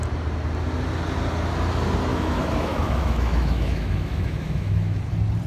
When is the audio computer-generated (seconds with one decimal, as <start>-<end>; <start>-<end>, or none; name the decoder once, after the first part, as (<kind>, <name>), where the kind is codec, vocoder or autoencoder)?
2.1-5.0 (autoencoder, DAC-VAE)